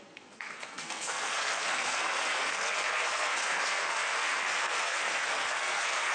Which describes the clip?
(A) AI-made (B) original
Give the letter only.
A